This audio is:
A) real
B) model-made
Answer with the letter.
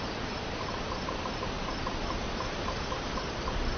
A